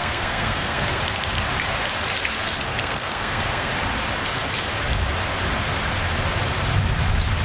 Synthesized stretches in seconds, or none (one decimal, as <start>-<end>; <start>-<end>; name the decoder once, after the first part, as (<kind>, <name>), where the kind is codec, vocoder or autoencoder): 0.0-1.0 (codec, SNAC); 2.8-3.7